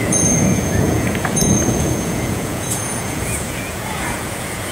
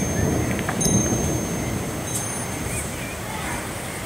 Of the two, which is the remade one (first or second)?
first